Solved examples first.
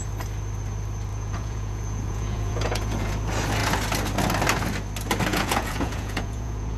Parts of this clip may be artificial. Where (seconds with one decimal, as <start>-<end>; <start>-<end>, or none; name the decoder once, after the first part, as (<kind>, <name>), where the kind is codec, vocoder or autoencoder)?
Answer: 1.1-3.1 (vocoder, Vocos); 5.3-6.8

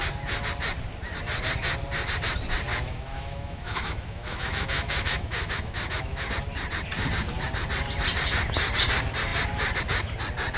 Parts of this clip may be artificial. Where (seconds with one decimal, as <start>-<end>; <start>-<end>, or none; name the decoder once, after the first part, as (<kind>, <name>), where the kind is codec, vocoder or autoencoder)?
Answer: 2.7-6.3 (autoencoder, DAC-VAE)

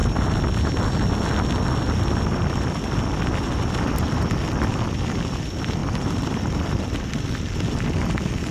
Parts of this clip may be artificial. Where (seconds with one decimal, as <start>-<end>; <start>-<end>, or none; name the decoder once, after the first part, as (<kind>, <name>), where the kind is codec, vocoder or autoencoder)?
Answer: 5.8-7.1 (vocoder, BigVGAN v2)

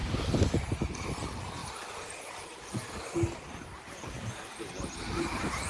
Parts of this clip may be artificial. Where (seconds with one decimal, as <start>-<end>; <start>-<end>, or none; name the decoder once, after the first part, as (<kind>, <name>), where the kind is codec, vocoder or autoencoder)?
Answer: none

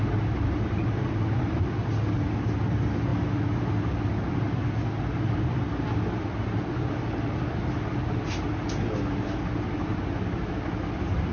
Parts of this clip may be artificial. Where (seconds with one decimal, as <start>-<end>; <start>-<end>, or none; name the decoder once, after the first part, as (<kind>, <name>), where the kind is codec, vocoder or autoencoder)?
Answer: none

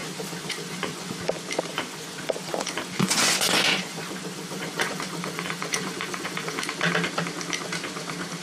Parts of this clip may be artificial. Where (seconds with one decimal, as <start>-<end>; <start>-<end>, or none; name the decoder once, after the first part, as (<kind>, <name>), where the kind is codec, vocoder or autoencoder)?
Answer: 0.0-1.2 (vocoder, Vocos); 1.7-6.6